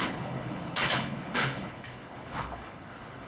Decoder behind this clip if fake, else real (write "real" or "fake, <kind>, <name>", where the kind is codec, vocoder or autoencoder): fake, codec, HILCodec